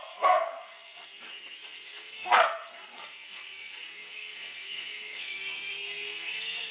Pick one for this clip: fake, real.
fake